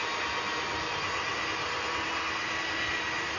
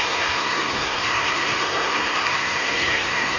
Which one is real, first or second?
first